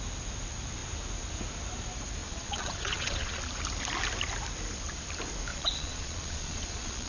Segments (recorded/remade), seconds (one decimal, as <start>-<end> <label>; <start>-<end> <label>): 0.0-2.2 recorded; 2.2-3.4 remade; 3.4-5.5 recorded; 5.5-7.1 remade